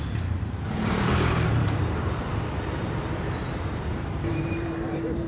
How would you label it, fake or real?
fake